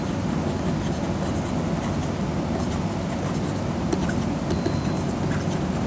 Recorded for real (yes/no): yes